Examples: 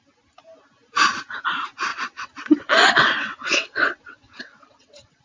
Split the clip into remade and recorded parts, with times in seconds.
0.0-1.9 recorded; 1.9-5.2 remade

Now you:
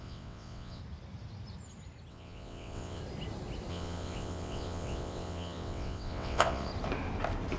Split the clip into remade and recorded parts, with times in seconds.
0.0-0.8 remade; 0.8-2.1 recorded; 2.1-3.0 remade; 3.0-3.7 recorded; 3.7-6.7 remade; 6.7-7.6 recorded

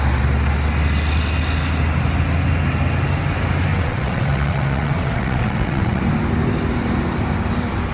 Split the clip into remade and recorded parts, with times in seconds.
0.0-3.7 recorded; 3.7-6.0 remade; 6.0-7.9 recorded